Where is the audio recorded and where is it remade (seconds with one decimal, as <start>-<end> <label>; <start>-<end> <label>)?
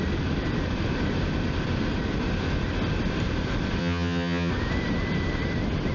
0.0-3.8 recorded; 3.8-4.5 remade; 4.5-5.9 recorded